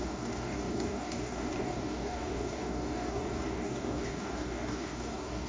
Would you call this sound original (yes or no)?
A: no